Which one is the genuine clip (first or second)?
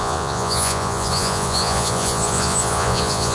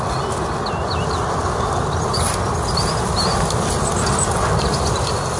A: second